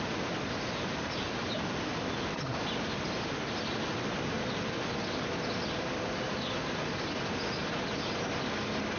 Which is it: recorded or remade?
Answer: recorded